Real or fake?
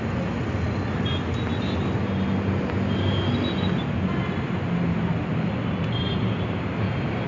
real